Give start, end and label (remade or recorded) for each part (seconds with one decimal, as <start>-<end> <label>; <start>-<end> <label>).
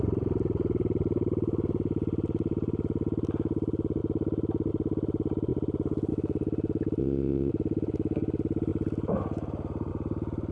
0.0-7.0 recorded; 7.0-7.5 remade; 7.5-10.5 recorded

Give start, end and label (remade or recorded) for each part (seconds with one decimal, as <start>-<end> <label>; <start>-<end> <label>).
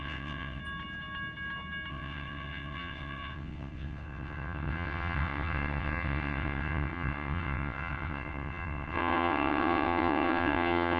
0.0-0.6 remade; 0.6-1.9 recorded; 1.9-11.0 remade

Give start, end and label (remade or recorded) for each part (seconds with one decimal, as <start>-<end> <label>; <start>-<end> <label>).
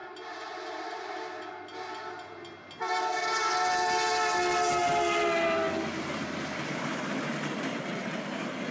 0.0-7.7 recorded; 7.7-8.2 remade; 8.2-8.7 recorded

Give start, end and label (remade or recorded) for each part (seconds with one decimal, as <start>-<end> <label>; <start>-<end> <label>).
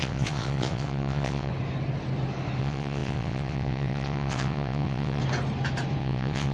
0.0-1.5 remade; 1.5-2.6 recorded; 2.6-5.2 remade; 5.2-6.0 recorded; 6.0-6.5 remade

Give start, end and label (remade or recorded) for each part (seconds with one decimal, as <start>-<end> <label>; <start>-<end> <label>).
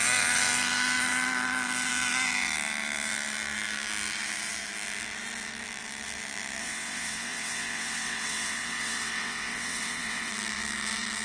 0.0-6.6 recorded; 6.6-10.3 remade; 10.3-11.2 recorded